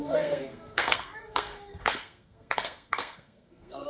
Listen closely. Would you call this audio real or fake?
fake